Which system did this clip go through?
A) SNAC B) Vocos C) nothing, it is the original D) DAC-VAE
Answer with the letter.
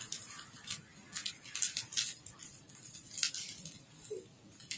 C